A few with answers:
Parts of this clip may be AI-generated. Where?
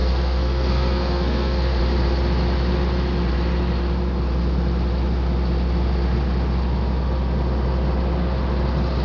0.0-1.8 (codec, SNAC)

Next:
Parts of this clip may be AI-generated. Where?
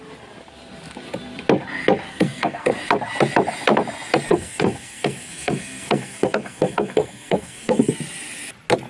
2.1-2.7 (codec, SNAC); 4.3-7.9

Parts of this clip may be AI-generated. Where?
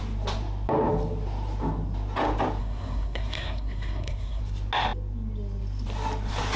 2.6-4.4 (codec, SNAC)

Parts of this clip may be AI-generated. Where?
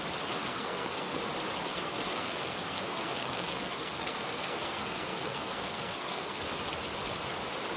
0.4-1.2 (codec, SNAC); 1.7-6.4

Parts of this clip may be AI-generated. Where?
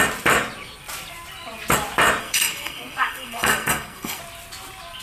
2.2-4.2 (codec, SNAC)